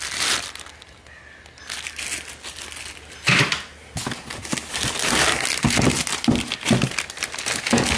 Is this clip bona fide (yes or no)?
yes